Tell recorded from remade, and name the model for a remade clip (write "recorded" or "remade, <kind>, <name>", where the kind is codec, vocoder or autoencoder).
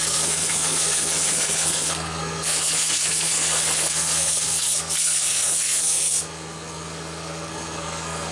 remade, codec, SNAC